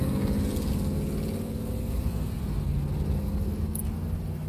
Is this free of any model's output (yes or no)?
yes